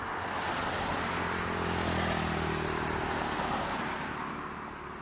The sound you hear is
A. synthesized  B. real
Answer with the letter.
B